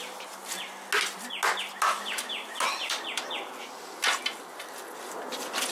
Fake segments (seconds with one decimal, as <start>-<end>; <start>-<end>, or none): 2.7-5.7